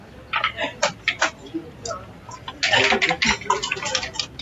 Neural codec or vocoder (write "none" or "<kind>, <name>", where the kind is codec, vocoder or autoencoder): none